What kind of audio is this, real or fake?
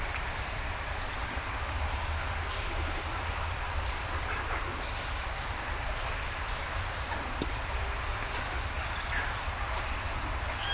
fake